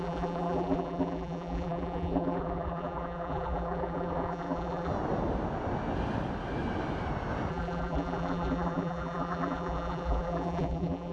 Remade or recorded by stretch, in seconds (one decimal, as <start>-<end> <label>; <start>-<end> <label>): 0.0-4.9 remade; 4.9-7.5 recorded; 7.5-11.1 remade